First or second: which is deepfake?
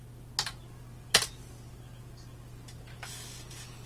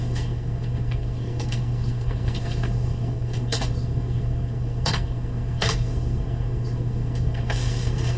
second